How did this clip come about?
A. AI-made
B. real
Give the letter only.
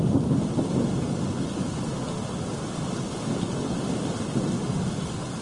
B